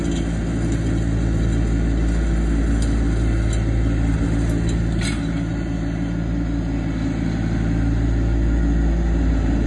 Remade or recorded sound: recorded